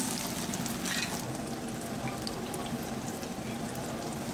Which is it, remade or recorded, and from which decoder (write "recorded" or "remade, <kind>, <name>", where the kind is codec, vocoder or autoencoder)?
recorded